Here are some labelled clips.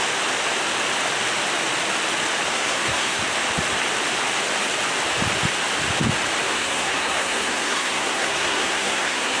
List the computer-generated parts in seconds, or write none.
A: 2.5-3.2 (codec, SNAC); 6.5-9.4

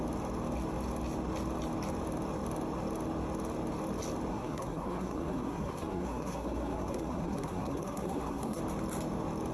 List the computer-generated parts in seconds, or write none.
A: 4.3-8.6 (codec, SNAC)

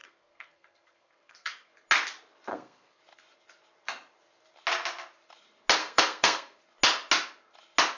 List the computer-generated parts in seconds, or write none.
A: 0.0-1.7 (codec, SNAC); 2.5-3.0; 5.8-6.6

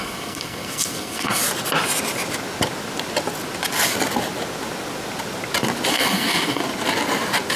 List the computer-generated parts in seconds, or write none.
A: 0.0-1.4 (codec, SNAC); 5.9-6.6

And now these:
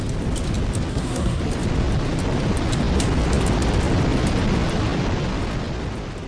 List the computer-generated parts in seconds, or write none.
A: 0.9-1.4 (codec, SNAC)

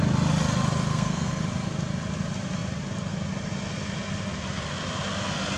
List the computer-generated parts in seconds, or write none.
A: 0.9-1.4 (codec, SNAC)